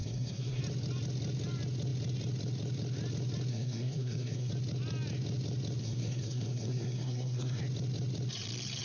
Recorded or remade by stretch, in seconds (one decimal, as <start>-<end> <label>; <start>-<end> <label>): 0.0-0.6 remade; 0.6-3.5 recorded; 3.5-4.5 remade; 4.5-5.8 recorded; 5.8-7.6 remade; 7.6-8.8 recorded